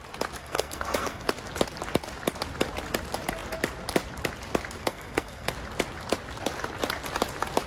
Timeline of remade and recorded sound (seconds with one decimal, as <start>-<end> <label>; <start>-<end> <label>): 0.0-0.4 recorded; 0.4-1.3 remade; 1.3-4.8 recorded; 4.8-5.5 remade; 5.5-7.7 recorded